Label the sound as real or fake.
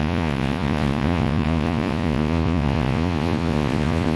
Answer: fake